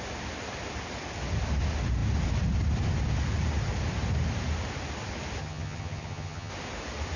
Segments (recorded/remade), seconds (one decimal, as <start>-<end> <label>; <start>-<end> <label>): 0.0-5.4 recorded; 5.4-6.5 remade; 6.5-7.2 recorded